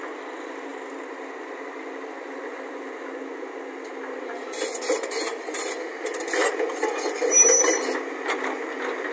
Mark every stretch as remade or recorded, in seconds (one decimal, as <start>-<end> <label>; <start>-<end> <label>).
0.0-9.1 recorded